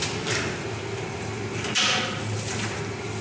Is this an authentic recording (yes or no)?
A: yes